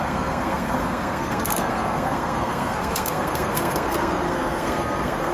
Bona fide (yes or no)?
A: no